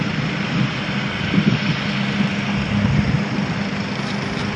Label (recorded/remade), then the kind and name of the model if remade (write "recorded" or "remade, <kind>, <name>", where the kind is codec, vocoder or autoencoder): remade, vocoder, BigVGAN v2